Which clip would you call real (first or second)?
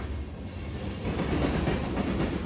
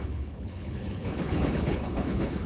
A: first